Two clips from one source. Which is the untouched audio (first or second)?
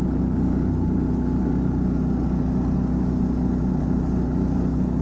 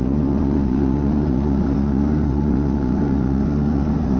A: first